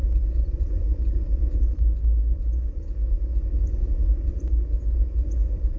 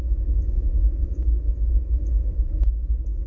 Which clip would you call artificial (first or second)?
second